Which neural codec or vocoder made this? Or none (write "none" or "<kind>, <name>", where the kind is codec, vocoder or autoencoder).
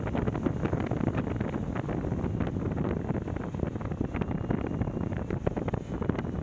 none